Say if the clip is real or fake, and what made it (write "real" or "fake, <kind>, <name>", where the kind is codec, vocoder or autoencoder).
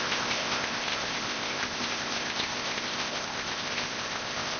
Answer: fake, codec, ZipCodec